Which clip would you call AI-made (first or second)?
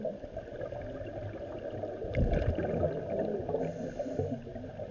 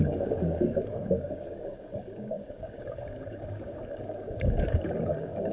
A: second